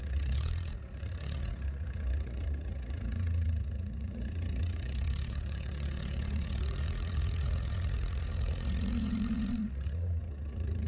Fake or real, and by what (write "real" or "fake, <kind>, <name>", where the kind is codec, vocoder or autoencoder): fake, vocoder, Vocos